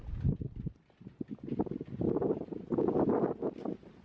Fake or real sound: real